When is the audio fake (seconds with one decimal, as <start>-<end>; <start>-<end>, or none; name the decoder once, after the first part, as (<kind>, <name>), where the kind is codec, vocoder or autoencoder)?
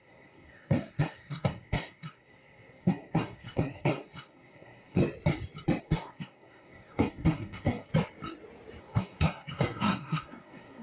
0.0-5.0 (codec, SNAC); 5.8-7.9; 8.8-10.8